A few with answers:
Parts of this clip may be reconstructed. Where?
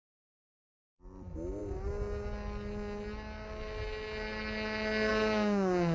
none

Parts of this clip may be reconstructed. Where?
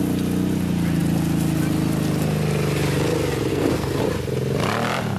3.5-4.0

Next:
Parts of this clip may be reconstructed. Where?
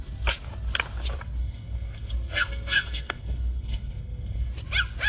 1.4-4.5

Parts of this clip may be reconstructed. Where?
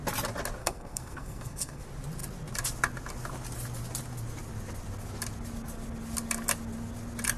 0.6-1.8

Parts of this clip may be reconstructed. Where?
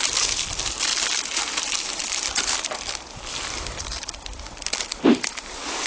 none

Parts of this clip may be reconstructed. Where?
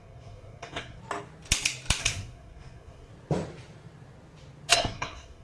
0.0-1.0; 2.0-3.1; 4.7-5.4